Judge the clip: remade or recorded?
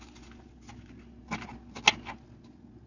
recorded